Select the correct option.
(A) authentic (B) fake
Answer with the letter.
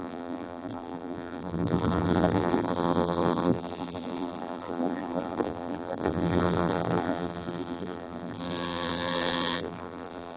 B